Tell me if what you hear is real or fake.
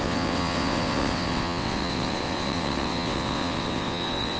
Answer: fake